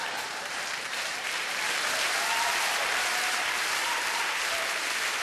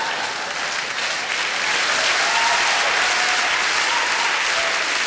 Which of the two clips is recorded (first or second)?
second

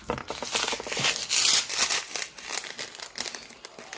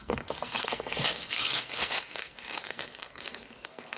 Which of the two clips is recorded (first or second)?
first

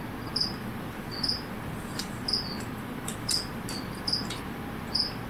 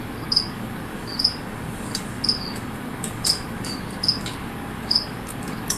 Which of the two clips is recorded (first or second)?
first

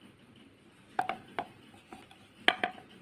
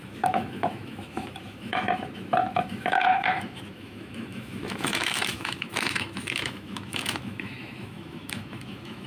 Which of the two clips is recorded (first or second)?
first